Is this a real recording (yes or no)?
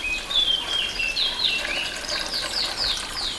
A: yes